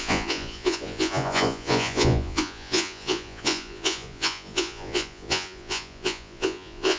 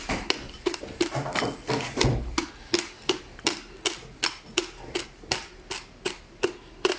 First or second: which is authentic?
second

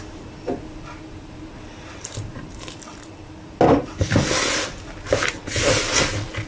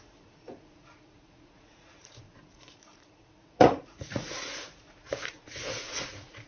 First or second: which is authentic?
first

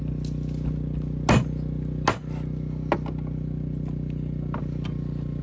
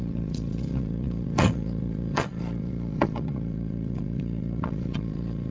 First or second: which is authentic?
first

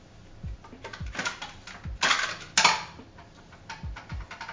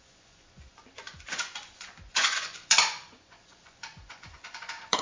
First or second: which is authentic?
first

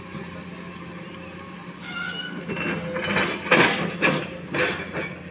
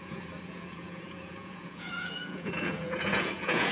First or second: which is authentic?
first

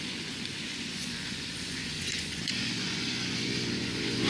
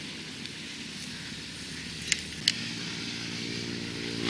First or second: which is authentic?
second